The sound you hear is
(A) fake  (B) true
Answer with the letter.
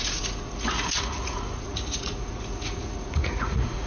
A